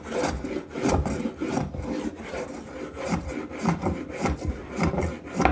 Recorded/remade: recorded